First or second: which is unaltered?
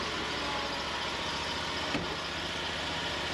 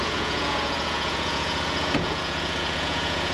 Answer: first